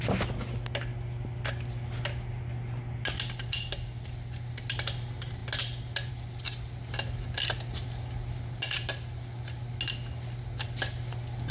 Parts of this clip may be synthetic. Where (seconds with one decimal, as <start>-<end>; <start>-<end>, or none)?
none